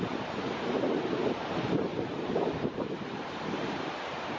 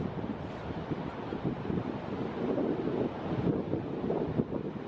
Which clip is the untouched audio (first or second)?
second